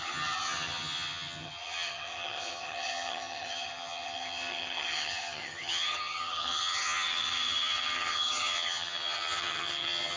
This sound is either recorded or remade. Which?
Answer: remade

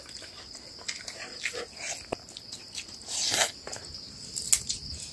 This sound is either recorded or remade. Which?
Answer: recorded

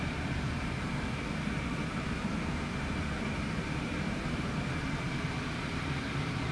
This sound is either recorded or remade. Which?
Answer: remade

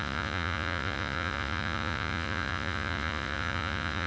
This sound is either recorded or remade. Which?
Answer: remade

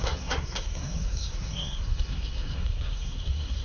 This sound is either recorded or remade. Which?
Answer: remade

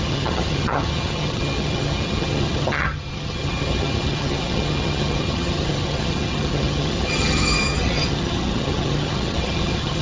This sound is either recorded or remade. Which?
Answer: remade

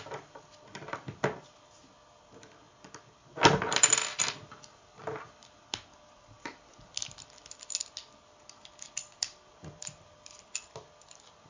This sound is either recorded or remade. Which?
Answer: recorded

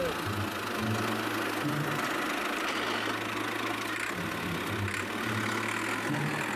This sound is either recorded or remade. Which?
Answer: recorded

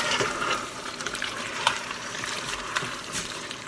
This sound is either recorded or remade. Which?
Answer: remade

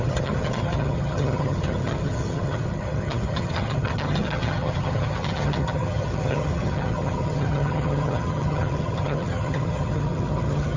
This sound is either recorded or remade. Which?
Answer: remade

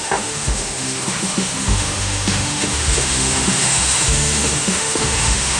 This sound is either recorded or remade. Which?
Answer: remade